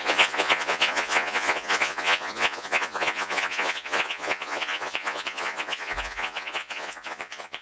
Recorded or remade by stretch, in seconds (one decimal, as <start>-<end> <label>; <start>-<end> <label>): 0.0-7.6 remade